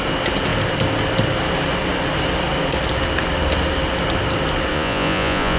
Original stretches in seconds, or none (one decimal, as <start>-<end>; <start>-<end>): 0.0-4.7